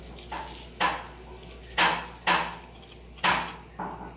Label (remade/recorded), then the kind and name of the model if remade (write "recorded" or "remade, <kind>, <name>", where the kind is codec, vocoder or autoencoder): recorded